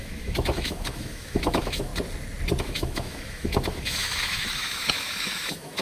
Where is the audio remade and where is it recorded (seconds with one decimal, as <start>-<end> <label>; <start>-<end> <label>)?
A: 0.0-1.9 remade; 1.9-2.6 recorded; 2.6-5.8 remade